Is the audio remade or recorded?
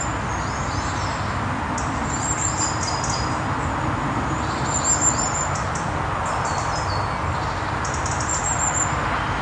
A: recorded